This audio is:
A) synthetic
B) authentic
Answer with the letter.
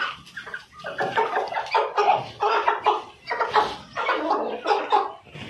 B